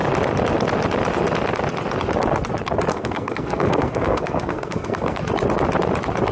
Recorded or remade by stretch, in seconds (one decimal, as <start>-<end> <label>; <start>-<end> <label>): 0.0-2.9 recorded; 2.9-5.2 remade; 5.2-6.3 recorded